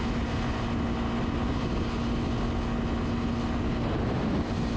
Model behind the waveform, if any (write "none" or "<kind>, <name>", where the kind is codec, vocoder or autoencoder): none